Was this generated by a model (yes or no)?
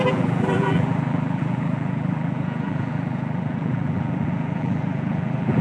yes